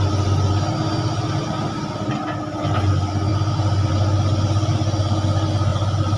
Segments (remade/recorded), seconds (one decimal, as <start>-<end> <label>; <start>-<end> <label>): 0.0-6.2 recorded